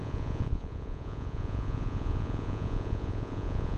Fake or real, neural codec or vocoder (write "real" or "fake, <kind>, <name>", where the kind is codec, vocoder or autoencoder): fake, vocoder, Vocos